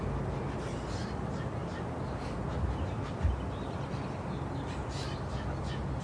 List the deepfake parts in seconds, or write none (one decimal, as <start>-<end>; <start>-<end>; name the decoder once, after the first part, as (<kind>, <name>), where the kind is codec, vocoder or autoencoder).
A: none